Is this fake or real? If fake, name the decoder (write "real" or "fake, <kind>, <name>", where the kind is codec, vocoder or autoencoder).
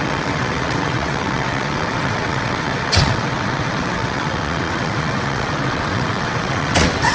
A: fake, vocoder, WaveNeXt